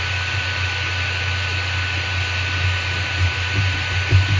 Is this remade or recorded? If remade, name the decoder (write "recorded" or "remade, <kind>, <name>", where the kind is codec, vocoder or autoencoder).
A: recorded